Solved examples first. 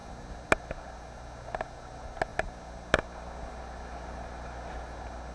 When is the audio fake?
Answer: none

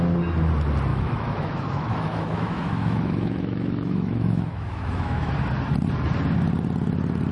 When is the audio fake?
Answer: 0.9-5.3 (autoencoder, DAC-VAE)

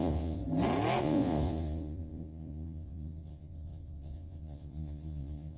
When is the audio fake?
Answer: 0.0-0.4 (vocoder, Vocos); 1.0-5.6